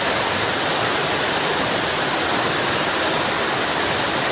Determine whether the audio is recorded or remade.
recorded